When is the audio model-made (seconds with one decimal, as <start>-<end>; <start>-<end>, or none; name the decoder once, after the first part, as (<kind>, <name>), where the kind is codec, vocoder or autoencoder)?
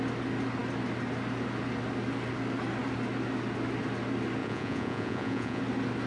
4.4-5.6 (vocoder, Vocos)